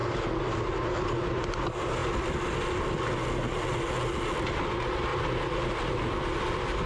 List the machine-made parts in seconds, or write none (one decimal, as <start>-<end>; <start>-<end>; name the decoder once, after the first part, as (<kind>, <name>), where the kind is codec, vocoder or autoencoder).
none